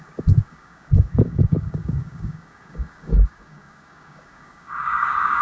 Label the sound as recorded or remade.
remade